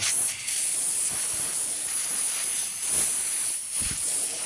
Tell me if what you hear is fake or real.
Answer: real